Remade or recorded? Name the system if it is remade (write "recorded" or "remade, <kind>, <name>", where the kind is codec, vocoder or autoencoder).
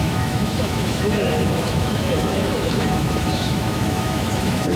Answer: remade, autoencoder, DAC-VAE